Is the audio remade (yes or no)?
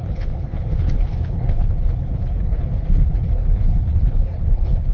yes